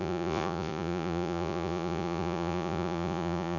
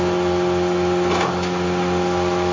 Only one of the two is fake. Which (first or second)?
first